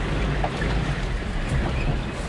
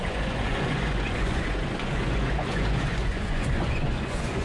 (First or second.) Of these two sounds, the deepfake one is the second